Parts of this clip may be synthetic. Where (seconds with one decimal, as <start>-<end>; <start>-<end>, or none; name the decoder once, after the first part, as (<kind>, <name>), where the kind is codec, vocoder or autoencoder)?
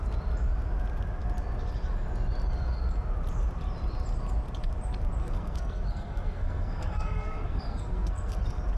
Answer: 5.2-8.4 (codec, SNAC)